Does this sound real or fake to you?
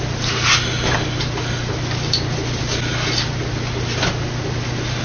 real